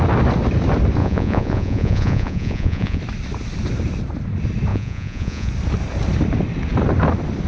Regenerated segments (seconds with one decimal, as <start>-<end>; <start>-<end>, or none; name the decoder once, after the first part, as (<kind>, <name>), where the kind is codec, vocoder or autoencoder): 1.0-3.0 (vocoder, Vocos); 4.7-5.5